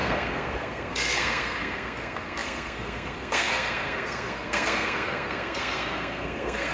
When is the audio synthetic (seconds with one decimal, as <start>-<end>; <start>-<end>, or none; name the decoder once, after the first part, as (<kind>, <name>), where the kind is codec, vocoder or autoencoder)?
0.0-6.7 (codec, SNAC)

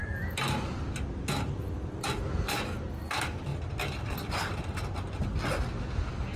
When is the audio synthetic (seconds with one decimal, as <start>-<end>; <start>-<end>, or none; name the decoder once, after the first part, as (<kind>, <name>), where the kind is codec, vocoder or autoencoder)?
none

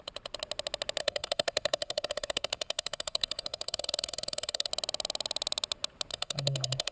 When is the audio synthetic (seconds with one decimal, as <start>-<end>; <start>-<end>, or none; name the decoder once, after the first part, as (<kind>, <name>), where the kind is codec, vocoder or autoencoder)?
1.0-4.7 (codec, SNAC); 6.1-6.9

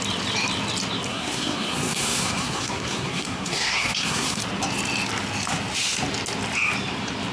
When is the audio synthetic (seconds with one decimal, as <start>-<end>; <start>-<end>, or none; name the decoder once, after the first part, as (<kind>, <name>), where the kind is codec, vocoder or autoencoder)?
1.1-4.4 (codec, SNAC)

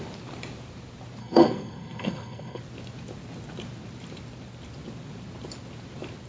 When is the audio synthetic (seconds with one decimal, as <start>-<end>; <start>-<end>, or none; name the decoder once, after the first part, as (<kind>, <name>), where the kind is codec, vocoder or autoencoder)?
1.2-2.6 (codec, SNAC)

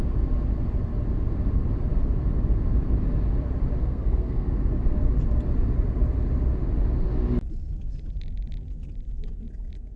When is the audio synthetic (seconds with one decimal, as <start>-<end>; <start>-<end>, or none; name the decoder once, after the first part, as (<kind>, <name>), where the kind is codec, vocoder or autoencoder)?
3.8-4.5 (codec, SNAC)

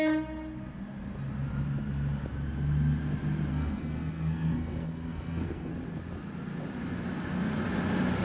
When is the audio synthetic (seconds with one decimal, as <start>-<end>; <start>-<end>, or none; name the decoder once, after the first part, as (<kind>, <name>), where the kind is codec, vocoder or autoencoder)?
3.5-5.7 (codec, SNAC)